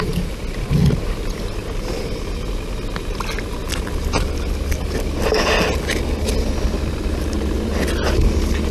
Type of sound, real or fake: real